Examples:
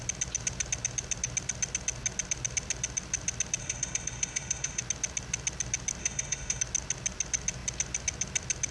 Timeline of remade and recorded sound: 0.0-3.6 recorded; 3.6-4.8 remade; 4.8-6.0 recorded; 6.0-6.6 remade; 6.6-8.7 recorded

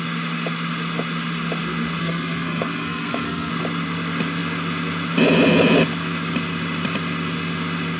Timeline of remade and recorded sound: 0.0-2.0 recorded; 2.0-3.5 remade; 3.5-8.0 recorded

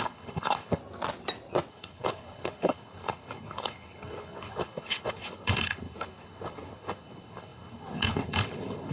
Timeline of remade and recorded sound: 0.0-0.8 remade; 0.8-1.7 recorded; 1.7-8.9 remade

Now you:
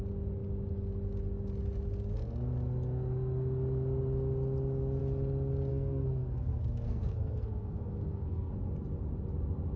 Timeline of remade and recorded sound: 0.0-5.7 recorded; 5.7-8.5 remade; 8.5-9.8 recorded

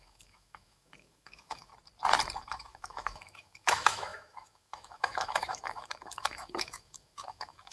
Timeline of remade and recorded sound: 0.0-1.7 remade; 1.7-2.4 recorded; 2.4-7.7 remade

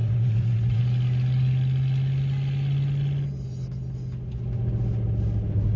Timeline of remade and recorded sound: 0.0-0.8 remade; 0.8-5.8 recorded